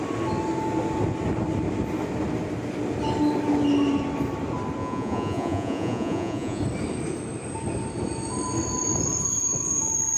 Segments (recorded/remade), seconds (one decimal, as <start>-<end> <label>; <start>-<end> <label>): 0.0-4.8 recorded; 4.8-6.6 remade; 6.6-10.2 recorded